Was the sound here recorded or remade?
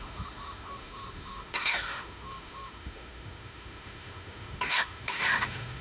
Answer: remade